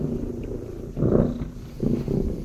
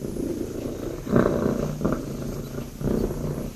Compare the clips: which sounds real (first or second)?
second